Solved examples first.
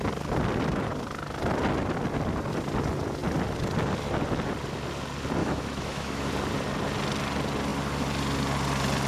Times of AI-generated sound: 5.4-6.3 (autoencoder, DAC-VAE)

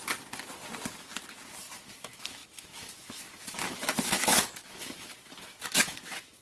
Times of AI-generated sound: 1.8-6.4 (autoencoder, DAC-VAE)

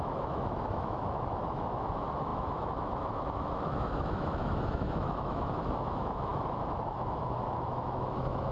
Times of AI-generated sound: 0.0-8.5 (autoencoder, DAC-VAE)